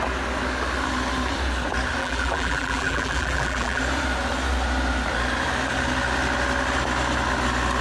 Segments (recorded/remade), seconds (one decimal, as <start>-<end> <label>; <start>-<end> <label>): 0.0-2.0 recorded; 2.0-3.8 remade; 3.8-7.8 recorded